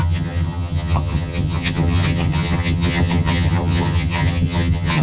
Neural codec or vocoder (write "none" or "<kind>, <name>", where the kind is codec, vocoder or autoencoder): vocoder, HiFi-GAN